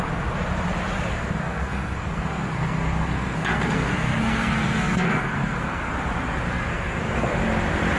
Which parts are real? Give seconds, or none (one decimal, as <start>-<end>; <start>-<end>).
0.0-1.1; 5.9-6.7; 7.4-8.0